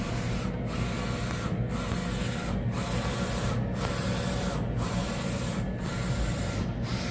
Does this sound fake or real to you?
real